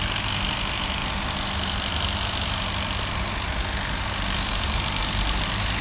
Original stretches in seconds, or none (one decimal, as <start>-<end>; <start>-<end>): 0.0-5.8